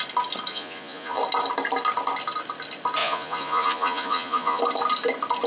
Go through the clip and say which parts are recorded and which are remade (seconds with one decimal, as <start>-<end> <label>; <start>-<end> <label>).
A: 0.0-0.5 recorded; 0.5-1.2 remade; 1.2-3.0 recorded; 3.0-4.6 remade; 4.6-5.5 recorded